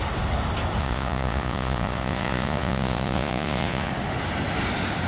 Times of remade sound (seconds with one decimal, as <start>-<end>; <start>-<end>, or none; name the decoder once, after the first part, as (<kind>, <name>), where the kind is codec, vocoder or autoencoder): 0.8-3.9 (vocoder, Vocos)